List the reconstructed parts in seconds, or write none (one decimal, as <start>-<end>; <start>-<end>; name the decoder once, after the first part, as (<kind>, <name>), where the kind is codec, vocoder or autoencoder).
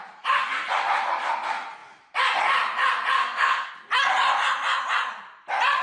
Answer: 3.2-3.7 (codec, SNAC)